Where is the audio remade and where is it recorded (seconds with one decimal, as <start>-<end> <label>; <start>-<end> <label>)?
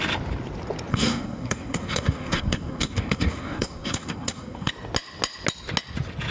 0.0-0.9 recorded; 0.9-4.7 remade; 4.7-6.3 recorded